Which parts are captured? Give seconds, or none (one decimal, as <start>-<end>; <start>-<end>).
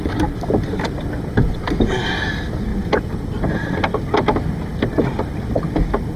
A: 0.0-6.2